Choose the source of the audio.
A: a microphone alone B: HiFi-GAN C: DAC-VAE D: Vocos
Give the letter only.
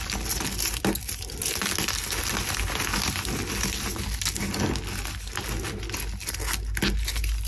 A